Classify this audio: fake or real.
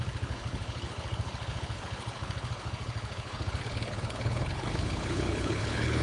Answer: fake